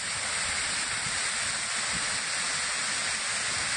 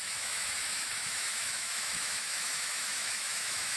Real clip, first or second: first